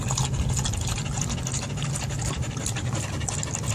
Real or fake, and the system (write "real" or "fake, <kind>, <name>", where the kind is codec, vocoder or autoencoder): real